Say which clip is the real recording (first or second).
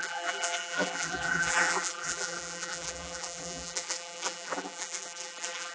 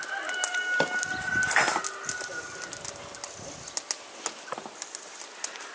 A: second